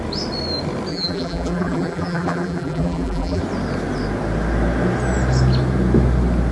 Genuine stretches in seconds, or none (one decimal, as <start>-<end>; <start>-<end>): 0.0-0.9; 3.4-6.5